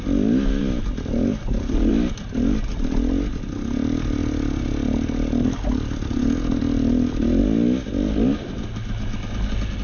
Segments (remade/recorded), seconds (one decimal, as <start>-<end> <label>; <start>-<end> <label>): 0.0-9.8 recorded